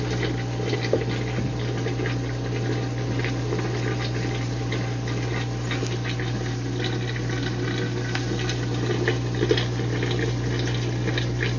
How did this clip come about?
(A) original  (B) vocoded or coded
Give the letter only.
A